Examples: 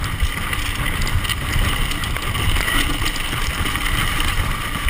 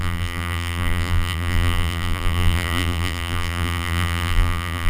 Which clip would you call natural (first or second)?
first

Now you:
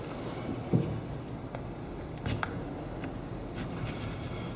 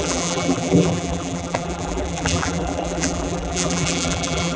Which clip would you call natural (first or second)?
first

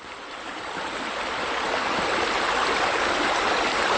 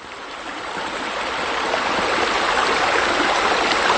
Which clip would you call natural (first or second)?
second